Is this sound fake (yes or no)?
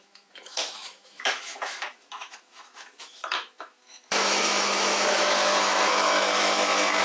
yes